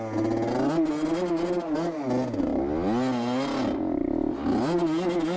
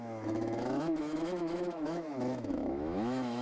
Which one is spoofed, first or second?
second